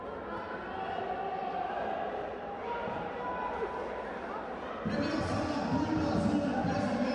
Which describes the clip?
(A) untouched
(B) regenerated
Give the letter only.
A